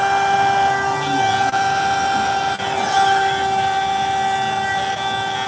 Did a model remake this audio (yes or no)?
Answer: no